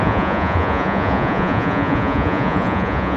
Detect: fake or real fake